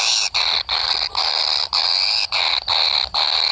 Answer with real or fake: real